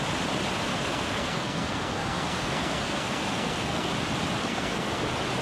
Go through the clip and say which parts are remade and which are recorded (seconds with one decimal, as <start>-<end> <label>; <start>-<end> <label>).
0.0-0.7 recorded; 0.7-3.9 remade; 3.9-4.4 recorded; 4.4-5.0 remade; 5.0-5.4 recorded